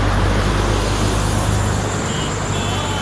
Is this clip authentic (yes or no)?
yes